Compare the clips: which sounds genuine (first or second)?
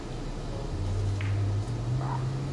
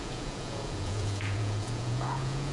first